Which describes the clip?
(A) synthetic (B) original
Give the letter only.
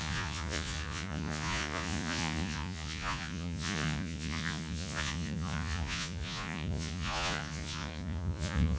A